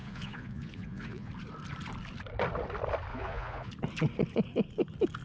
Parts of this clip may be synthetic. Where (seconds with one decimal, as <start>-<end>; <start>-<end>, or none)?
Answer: 0.0-1.3; 3.1-3.7

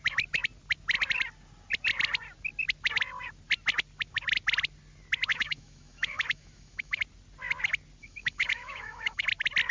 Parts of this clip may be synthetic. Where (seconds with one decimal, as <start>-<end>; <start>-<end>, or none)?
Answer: 5.3-7.0; 8.0-9.2

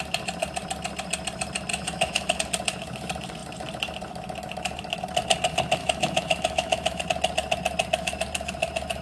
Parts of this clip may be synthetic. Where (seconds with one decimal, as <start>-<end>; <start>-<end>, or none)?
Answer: 1.7-2.4; 5.8-7.0

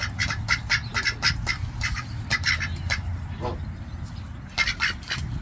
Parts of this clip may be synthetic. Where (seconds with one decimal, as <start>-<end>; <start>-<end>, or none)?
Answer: none

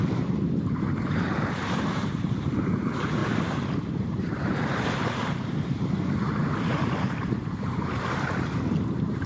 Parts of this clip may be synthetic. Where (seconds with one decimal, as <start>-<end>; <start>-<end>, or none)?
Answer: 0.0-3.2; 3.9-9.3

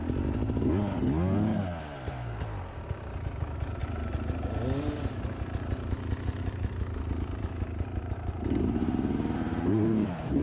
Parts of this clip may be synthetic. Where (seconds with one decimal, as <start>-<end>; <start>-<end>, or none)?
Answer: 1.8-3.8; 6.4-10.4

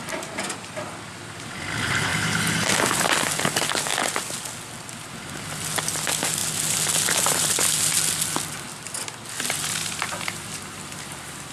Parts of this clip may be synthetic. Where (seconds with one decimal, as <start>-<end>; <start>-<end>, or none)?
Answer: none

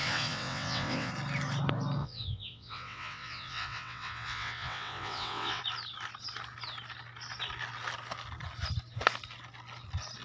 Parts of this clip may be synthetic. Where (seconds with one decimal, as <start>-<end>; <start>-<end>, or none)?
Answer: 0.0-1.1; 2.0-5.6